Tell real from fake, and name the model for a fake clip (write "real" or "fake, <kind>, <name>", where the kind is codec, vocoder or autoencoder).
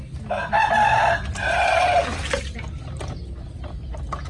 real